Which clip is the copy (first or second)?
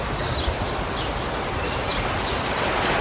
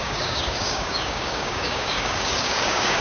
second